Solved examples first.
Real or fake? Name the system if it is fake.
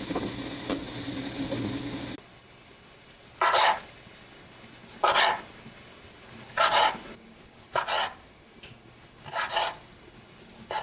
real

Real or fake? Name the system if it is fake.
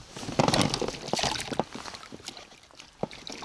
real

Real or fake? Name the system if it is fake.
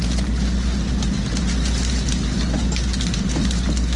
real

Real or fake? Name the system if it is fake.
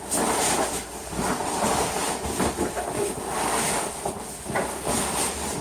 real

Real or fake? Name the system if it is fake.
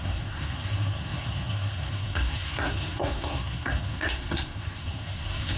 fake, codec, SNAC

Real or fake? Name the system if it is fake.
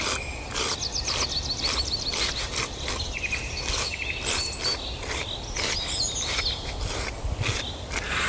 real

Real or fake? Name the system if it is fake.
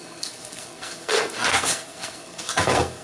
fake, codec, SNAC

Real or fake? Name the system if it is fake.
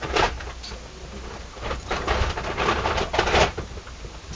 real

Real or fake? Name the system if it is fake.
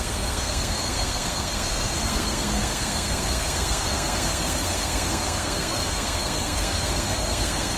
fake, codec, SNAC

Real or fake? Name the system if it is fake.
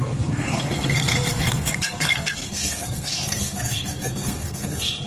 fake, codec, SNAC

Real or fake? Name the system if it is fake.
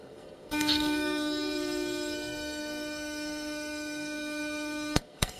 fake, codec, SNAC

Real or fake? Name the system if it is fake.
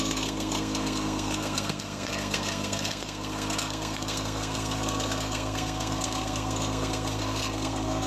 fake, codec, SNAC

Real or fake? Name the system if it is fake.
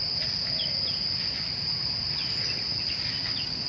real